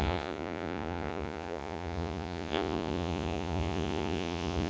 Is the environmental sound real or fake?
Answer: fake